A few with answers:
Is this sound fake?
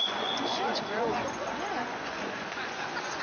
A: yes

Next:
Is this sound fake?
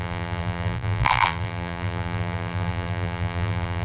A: yes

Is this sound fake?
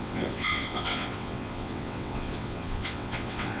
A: yes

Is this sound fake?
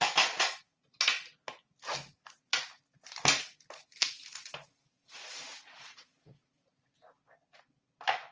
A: no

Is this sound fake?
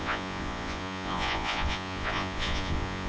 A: yes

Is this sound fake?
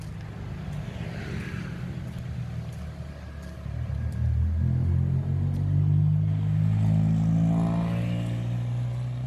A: no